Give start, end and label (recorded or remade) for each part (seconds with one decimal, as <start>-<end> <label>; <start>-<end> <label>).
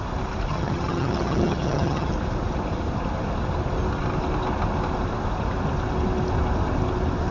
0.0-0.5 recorded; 0.5-2.1 remade; 2.1-7.3 recorded